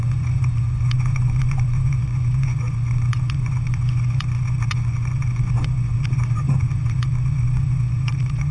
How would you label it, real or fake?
fake